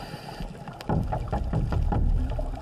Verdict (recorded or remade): recorded